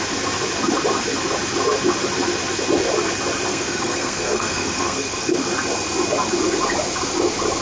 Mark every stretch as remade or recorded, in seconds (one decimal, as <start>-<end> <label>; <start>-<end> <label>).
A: 0.0-3.5 recorded; 3.5-5.5 remade; 5.5-7.6 recorded